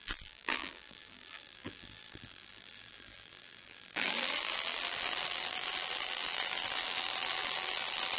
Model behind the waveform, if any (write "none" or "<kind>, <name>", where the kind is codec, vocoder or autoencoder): vocoder, BigVGAN v2